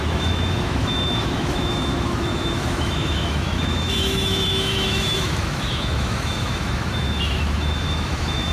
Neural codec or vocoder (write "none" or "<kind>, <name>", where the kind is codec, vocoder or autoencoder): autoencoder, DAC-VAE